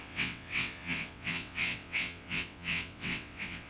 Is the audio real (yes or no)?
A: no